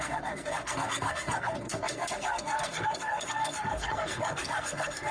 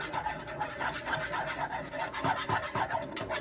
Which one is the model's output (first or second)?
first